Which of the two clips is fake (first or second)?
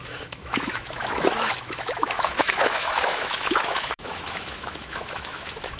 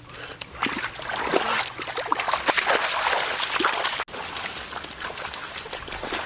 first